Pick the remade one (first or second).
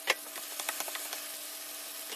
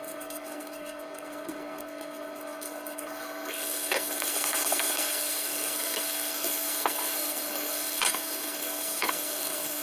second